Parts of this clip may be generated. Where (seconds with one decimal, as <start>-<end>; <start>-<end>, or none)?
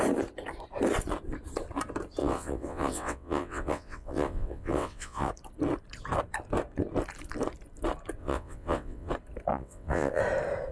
2.2-5.3; 8.2-9.1; 9.5-10.2